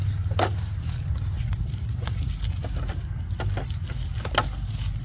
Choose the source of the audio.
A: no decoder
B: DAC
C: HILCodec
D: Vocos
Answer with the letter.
A